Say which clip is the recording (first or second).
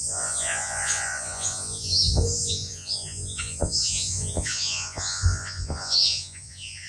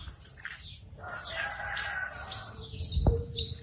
second